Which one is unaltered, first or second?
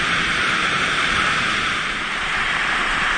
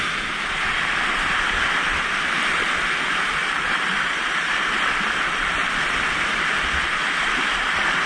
second